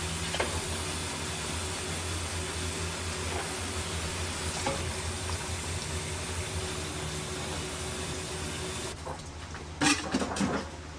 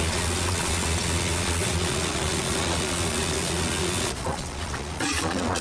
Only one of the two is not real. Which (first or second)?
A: second